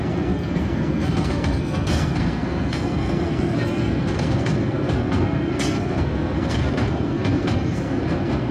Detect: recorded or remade remade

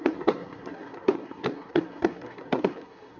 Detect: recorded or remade remade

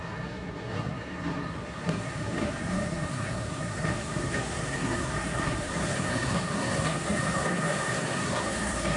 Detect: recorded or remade remade